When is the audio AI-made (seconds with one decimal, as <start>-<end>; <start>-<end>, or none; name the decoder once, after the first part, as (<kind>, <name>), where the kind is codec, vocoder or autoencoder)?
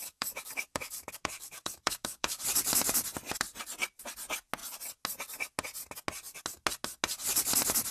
0.0-2.4 (codec, DAC)